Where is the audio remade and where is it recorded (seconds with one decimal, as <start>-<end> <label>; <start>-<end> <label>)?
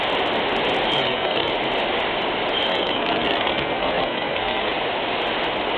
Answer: 0.0-1.0 recorded; 1.0-1.5 remade; 1.5-2.7 recorded; 2.7-4.7 remade; 4.7-5.8 recorded